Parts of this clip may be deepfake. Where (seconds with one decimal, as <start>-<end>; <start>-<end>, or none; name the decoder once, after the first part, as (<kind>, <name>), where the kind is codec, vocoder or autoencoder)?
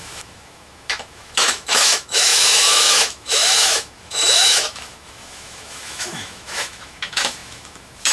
0.0-8.1 (autoencoder, DAC-VAE)